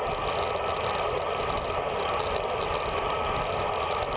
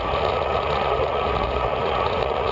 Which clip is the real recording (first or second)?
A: first